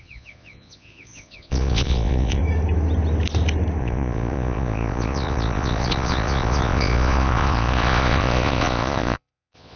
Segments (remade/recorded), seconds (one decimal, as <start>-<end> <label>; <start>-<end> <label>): 0.0-2.4 remade; 2.4-3.8 recorded; 3.8-9.8 remade